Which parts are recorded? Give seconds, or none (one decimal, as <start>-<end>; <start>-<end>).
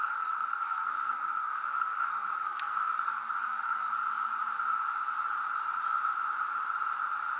3.9-7.4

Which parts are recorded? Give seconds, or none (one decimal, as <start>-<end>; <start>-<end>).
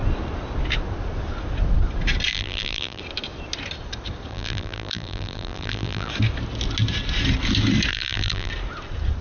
0.0-2.3; 3.0-4.3; 6.1-7.9; 8.5-9.2